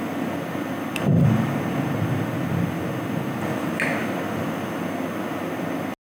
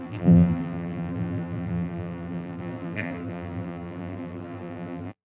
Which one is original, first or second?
first